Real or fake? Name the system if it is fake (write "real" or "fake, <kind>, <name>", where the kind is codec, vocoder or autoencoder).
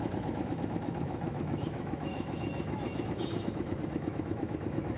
fake, autoencoder, DAC-VAE